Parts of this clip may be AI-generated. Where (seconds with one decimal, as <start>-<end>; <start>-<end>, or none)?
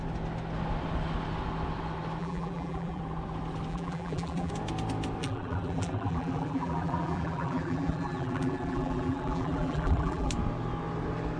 2.2-3.0; 3.7-4.5; 5.2-10.3